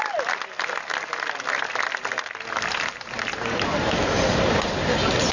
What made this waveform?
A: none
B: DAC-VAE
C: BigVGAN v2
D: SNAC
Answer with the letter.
A